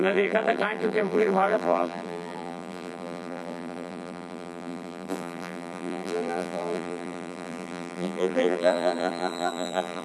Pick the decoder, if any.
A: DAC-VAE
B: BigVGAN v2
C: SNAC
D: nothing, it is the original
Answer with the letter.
B